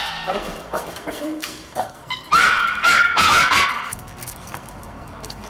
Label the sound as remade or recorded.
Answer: remade